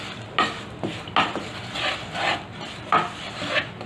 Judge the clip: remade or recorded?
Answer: recorded